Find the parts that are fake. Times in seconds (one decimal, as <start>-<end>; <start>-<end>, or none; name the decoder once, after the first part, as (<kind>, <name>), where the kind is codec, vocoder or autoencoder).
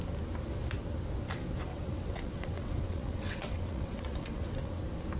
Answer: 1.7-4.8 (vocoder, WaveNeXt)